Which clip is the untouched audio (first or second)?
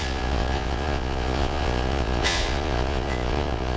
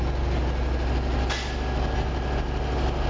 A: second